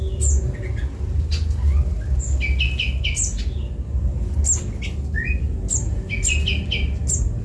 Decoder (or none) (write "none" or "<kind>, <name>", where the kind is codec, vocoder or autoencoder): none